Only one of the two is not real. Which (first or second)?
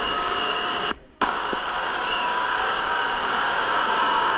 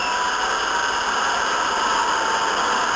first